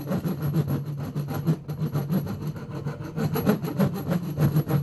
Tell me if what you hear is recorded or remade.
recorded